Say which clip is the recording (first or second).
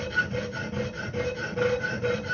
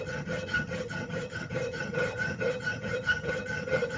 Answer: first